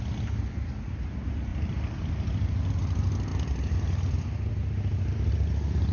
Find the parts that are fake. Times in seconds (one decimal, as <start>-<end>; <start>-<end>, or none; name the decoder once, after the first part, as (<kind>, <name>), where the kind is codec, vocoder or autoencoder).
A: 1.5-2.7 (vocoder, BigVGAN v2)

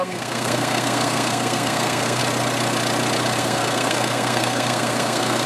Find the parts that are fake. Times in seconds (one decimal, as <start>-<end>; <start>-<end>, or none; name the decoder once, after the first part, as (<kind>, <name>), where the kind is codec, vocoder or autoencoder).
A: 0.0-2.2 (codec, SNAC); 3.4-5.5

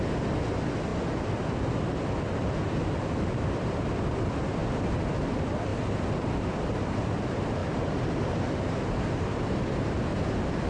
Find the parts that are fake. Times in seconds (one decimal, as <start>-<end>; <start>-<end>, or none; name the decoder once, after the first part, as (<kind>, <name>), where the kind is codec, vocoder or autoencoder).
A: 0.9-4.1 (vocoder, BigVGAN v2)

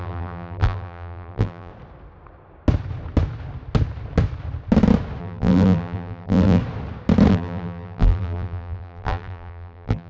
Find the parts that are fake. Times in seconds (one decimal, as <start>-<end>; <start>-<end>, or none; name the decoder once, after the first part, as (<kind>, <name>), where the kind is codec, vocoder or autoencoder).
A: 0.0-1.7 (vocoder, BigVGAN v2); 5.2-6.6; 7.3-10.1

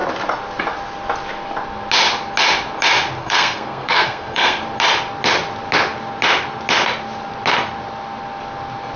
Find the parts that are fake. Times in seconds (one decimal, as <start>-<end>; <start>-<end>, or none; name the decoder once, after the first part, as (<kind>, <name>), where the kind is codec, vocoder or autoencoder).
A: 3.2-4.6 (codec, SNAC)

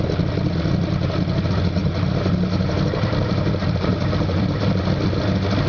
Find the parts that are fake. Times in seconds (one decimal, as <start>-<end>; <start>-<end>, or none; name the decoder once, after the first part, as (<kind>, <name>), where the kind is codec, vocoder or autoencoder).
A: 1.8-5.2 (vocoder, BigVGAN v2)

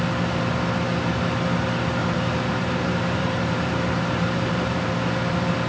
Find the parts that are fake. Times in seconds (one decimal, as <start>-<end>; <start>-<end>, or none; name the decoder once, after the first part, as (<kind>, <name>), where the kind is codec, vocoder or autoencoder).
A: 2.0-4.9 (vocoder, BigVGAN v2)

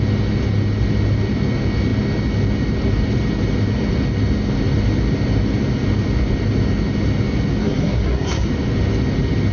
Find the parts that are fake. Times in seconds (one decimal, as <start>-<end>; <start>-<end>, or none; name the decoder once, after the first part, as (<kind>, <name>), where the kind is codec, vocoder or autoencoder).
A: 7.6-8.5 (codec, SNAC)